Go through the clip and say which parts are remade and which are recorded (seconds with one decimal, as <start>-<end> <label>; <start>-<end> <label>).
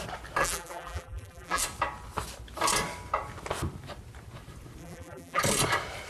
0.0-0.4 recorded; 0.4-1.6 remade; 1.6-4.8 recorded; 4.8-5.4 remade; 5.4-6.1 recorded